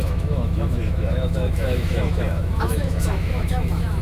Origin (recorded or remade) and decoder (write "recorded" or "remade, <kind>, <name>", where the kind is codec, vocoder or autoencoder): remade, autoencoder, DAC-VAE